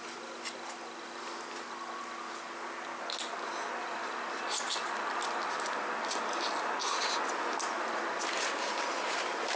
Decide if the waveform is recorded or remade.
recorded